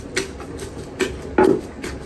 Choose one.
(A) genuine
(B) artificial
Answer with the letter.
A